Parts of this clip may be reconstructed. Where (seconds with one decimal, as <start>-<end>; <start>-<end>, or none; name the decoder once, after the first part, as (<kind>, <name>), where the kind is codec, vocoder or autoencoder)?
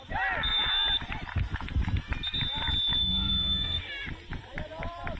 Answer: 3.0-3.8 (codec, SNAC)